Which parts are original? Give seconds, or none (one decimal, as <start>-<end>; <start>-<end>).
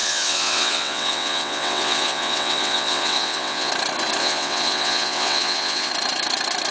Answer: 3.7-4.2; 5.9-6.7